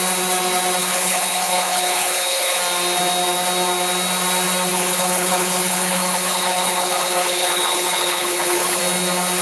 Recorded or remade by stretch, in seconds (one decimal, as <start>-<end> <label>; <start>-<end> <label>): 0.0-0.8 recorded; 0.8-2.6 remade; 2.6-4.7 recorded; 4.7-8.8 remade; 8.8-9.4 recorded